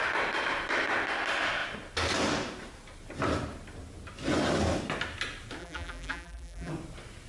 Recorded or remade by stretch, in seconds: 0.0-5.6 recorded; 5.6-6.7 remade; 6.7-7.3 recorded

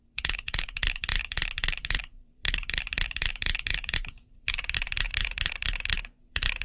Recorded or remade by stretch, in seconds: 0.0-6.6 remade

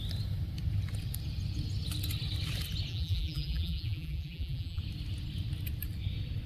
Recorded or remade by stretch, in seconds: 0.0-2.9 recorded; 2.9-4.8 remade; 4.8-6.5 recorded

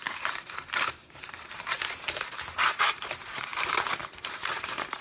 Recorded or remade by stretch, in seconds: 0.0-5.0 remade

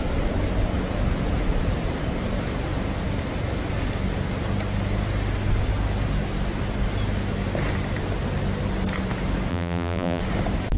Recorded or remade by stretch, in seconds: 0.0-9.5 recorded; 9.5-10.2 remade; 10.2-10.8 recorded

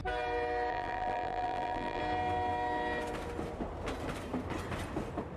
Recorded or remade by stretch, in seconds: 0.0-0.7 recorded; 0.7-2.0 remade; 2.0-5.4 recorded

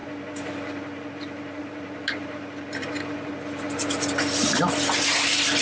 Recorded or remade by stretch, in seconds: 0.0-1.6 recorded; 1.6-3.3 remade; 3.3-5.6 recorded

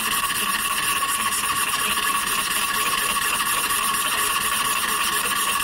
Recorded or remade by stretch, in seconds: 0.0-0.9 recorded; 0.9-4.3 remade; 4.3-5.6 recorded